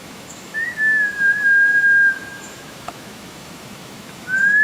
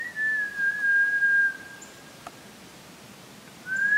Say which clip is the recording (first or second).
second